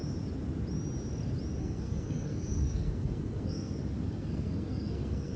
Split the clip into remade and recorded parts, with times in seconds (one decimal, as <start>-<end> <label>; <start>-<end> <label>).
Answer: 0.0-1.6 recorded; 1.6-5.4 remade